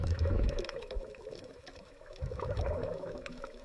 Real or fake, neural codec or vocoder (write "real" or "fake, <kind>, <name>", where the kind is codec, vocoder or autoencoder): fake, autoencoder, DAC-VAE